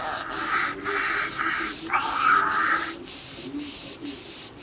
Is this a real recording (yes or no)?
yes